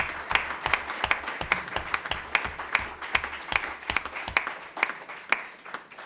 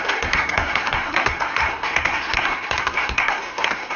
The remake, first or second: second